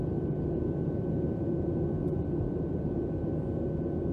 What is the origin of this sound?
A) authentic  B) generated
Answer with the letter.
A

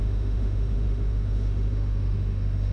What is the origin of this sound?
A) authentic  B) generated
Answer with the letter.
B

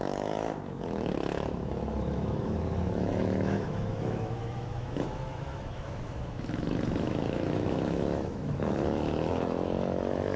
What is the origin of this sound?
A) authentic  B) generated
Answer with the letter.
B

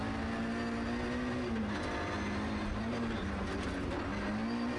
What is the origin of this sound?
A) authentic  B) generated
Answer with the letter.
A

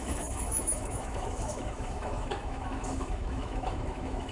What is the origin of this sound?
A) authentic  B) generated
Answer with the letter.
B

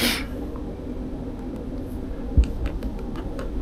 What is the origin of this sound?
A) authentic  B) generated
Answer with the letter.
A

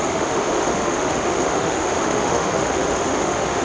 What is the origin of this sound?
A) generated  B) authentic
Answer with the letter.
A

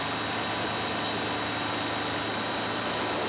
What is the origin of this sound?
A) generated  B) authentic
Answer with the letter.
B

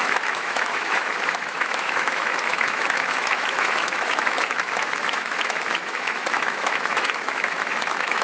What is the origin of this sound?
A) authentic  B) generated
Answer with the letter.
B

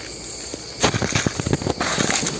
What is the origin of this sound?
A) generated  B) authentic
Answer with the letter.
B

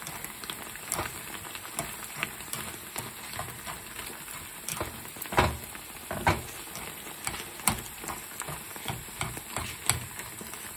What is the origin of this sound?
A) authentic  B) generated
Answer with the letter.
A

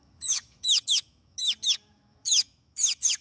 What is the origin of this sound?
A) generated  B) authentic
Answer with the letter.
A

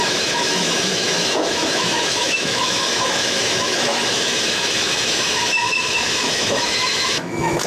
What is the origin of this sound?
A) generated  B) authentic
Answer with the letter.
A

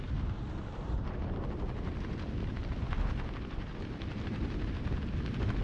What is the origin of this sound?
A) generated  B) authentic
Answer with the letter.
B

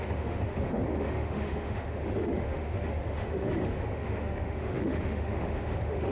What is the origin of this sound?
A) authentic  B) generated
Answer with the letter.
B